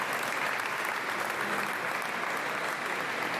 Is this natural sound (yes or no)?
yes